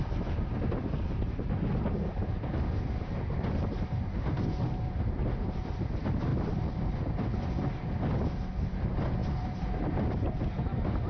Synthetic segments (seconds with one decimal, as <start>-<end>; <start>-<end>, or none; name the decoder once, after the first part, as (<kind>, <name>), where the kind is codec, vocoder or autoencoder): 2.2-3.1 (vocoder, BigVGAN v2); 6.3-7.6; 9.2-10.3